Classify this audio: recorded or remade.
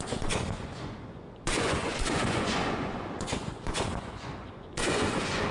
remade